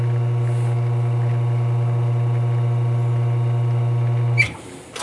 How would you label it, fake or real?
real